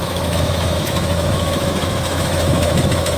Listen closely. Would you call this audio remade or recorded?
remade